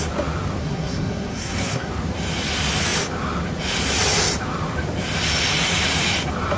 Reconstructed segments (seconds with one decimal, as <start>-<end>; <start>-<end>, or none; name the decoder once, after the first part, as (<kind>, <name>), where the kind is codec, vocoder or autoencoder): 0.6-1.9 (codec, SNAC)